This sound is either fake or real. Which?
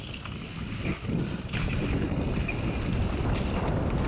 real